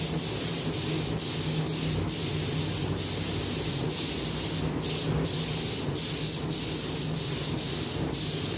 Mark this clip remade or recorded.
recorded